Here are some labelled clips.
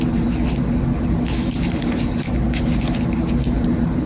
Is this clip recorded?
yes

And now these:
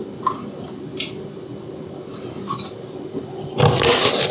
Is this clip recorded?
yes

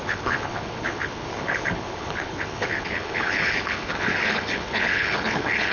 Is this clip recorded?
no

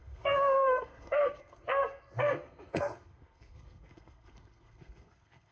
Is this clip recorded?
no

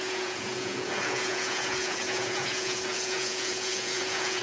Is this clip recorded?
no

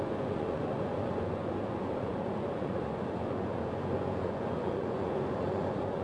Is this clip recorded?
no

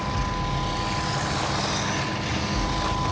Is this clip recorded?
yes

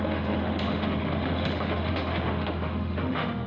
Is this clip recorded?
no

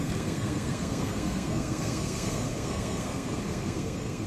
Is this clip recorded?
no